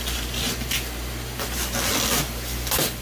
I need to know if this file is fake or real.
real